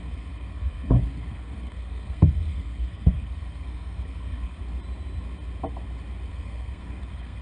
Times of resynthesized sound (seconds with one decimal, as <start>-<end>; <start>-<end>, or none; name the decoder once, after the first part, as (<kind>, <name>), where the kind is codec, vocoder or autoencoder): 0.0-4.6 (codec, SNAC); 6.3-7.4